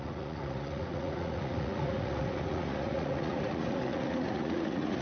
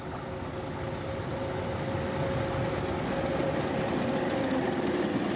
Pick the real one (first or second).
second